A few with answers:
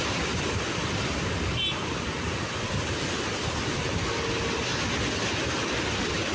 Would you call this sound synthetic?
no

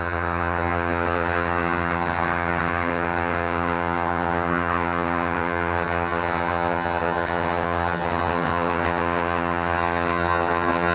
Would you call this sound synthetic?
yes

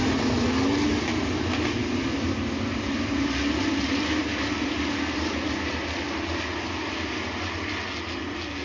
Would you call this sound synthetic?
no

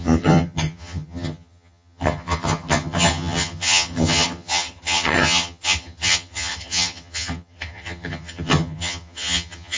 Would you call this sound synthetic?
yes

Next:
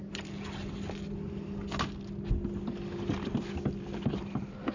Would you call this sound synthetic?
no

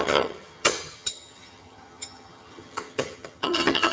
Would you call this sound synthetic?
yes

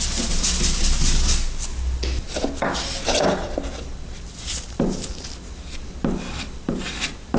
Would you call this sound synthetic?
no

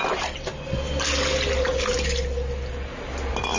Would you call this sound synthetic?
no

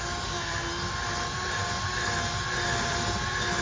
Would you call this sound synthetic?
no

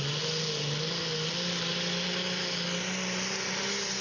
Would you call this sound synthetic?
no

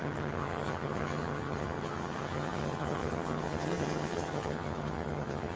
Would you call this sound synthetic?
yes